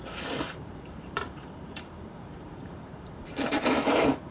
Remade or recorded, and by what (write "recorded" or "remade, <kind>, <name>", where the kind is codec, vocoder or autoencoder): remade, vocoder, BigVGAN v2